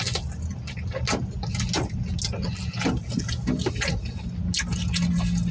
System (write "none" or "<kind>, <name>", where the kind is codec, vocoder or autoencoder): none